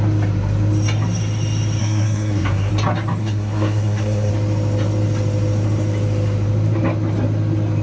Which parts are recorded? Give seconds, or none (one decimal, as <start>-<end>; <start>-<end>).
0.0-1.8; 2.7-3.2; 4.3-7.8